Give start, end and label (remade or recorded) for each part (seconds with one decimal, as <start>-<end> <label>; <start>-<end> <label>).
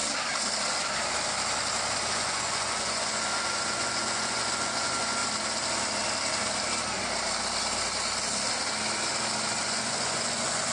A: 0.0-2.1 recorded; 2.1-5.2 remade; 5.2-9.6 recorded; 9.6-10.7 remade